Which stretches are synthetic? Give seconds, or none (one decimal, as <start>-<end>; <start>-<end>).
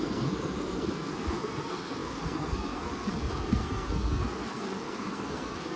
0.0-5.8